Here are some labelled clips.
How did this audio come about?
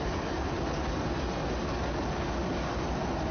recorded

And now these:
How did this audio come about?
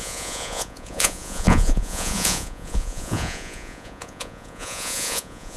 remade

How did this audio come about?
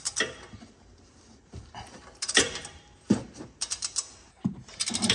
remade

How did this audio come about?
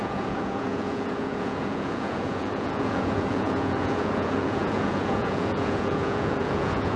remade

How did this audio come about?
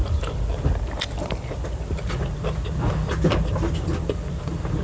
remade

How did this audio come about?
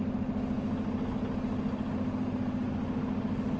recorded